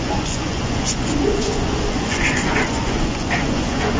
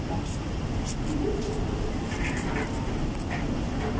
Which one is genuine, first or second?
second